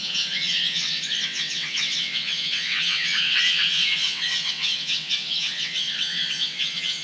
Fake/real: fake